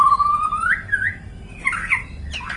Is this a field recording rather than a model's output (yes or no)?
yes